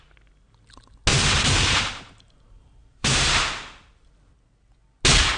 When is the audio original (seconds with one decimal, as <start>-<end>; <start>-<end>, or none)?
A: 0.0-1.1; 4.3-5.4